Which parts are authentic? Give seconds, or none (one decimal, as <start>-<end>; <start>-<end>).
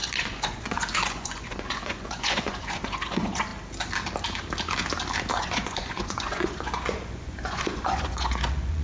3.5-5.4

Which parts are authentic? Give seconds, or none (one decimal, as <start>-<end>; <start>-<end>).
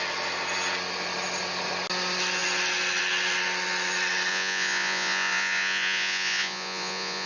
0.0-4.3